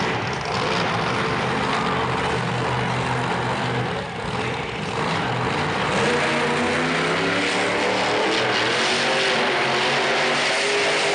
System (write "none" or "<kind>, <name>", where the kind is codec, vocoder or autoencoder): none